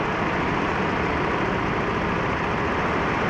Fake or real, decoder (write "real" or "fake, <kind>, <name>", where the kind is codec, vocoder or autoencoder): fake, vocoder, BigVGAN v2